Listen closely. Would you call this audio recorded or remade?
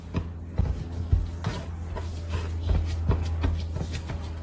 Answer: recorded